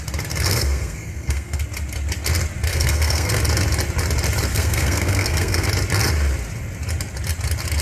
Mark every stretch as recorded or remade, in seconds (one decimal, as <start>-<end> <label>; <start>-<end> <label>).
0.0-0.5 recorded; 0.5-1.6 remade; 1.6-2.7 recorded; 2.7-3.4 remade; 3.4-4.5 recorded; 4.5-5.7 remade; 5.7-7.8 recorded